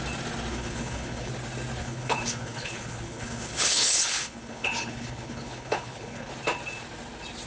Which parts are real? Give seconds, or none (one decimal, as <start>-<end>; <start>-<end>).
0.0-0.5; 1.3-1.8; 6.3-7.5